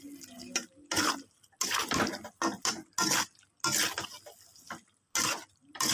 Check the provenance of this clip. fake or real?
real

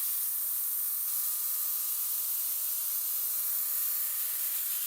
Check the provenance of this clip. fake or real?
fake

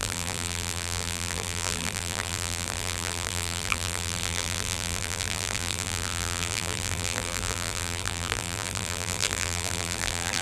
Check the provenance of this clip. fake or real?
fake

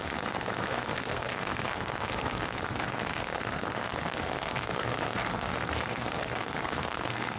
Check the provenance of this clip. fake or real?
fake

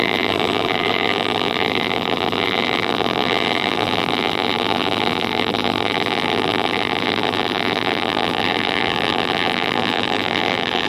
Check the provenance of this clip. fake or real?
fake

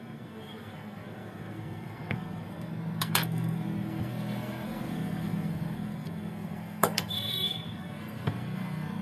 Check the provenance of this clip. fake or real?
fake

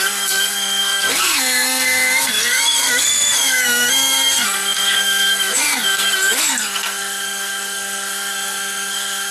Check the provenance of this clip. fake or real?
fake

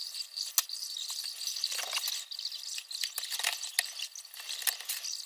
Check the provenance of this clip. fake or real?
real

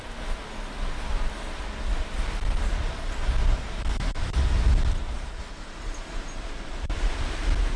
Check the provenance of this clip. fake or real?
real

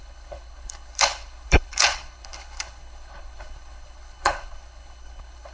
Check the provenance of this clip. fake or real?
fake